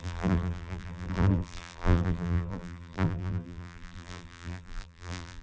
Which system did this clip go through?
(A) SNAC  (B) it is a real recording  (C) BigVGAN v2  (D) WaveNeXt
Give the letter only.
C